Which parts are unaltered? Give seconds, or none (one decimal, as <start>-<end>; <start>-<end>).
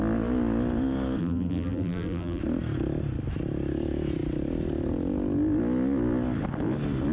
0.0-1.2; 2.4-7.1